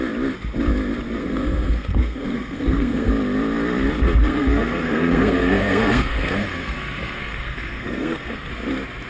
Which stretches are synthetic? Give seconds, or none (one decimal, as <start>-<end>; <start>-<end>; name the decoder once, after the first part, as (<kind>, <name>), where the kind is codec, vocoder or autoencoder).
1.2-3.1 (codec, SNAC); 4.3-8.5